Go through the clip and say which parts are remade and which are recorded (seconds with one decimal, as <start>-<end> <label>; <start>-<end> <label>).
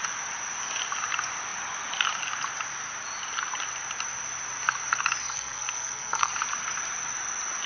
0.0-5.2 recorded; 5.2-6.3 remade; 6.3-7.7 recorded